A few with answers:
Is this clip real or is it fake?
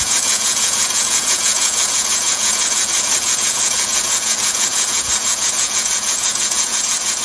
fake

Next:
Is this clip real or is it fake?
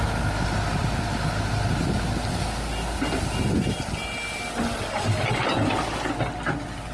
real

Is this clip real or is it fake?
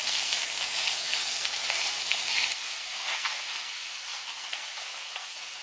fake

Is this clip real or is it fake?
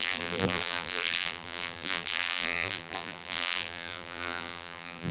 fake